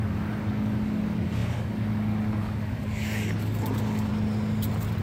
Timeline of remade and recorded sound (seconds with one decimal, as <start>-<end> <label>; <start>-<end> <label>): 0.0-4.1 remade; 4.1-5.0 recorded